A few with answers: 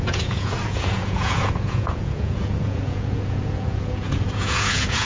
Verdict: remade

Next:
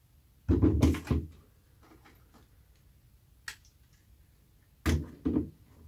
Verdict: recorded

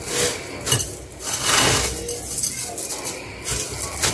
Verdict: recorded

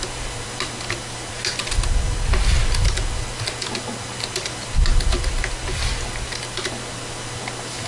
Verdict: recorded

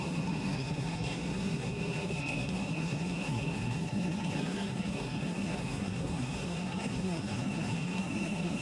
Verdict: remade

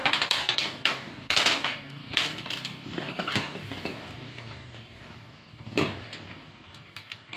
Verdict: remade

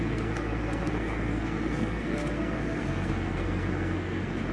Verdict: remade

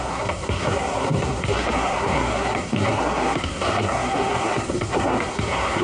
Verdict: remade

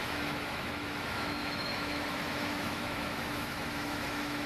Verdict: remade